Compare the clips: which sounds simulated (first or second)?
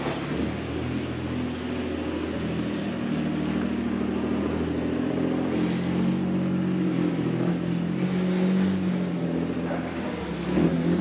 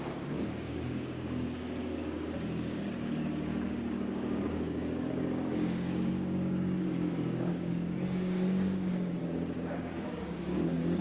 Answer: second